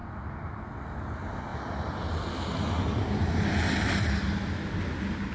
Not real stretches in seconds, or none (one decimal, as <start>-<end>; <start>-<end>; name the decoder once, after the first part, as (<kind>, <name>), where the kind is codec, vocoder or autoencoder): none